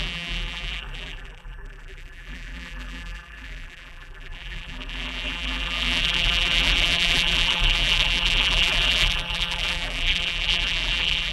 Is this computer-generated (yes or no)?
yes